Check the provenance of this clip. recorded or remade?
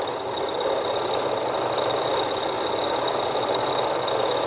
recorded